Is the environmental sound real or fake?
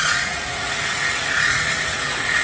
fake